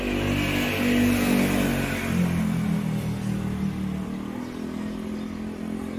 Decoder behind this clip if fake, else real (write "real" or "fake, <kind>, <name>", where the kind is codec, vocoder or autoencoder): real